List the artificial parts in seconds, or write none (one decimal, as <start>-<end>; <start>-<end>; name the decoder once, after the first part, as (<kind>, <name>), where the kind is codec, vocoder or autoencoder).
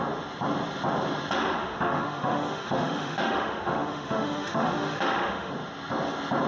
1.6-5.5 (autoencoder, DAC-VAE)